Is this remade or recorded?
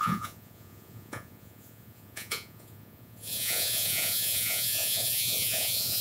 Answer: remade